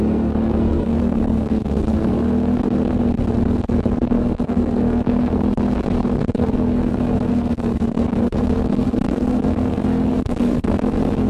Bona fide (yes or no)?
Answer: no